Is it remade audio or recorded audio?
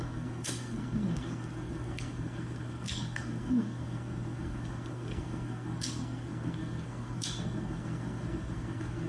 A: remade